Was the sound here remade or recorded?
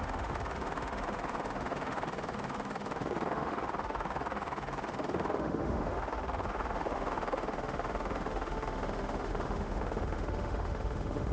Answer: remade